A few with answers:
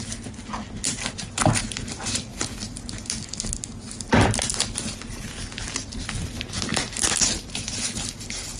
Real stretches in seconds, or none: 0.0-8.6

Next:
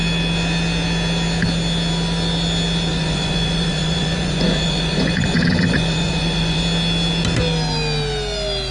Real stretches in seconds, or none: 0.0-2.9; 6.6-8.7

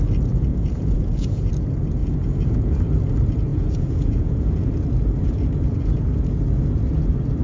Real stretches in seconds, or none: 0.0-0.5; 1.5-2.0; 2.8-3.5; 4.7-7.4

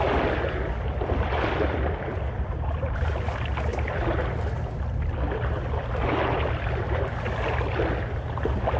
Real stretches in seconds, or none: 0.0-8.8